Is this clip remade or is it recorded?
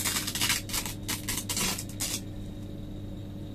recorded